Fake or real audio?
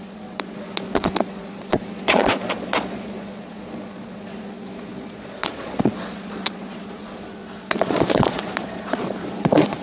fake